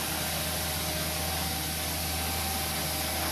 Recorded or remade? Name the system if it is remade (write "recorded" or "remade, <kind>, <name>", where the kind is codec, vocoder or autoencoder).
recorded